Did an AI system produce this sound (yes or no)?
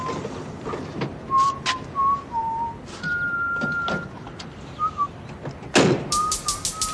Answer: no